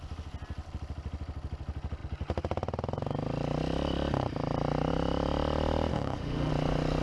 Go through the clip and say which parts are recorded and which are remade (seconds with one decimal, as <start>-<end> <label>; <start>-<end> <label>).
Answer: 0.0-5.9 recorded; 5.9-6.5 remade; 6.5-7.0 recorded